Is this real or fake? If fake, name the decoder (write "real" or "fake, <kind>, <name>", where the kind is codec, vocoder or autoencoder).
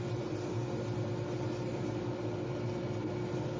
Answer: real